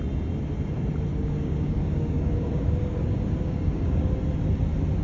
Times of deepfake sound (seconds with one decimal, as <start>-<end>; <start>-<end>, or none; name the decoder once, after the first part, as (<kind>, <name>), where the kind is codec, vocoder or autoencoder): 1.1-4.1 (codec, DAC)